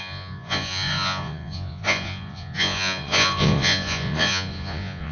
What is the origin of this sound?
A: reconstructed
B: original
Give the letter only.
A